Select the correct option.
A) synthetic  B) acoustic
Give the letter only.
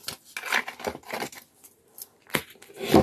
B